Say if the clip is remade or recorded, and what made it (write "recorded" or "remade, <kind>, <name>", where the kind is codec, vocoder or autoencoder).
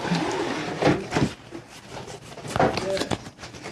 recorded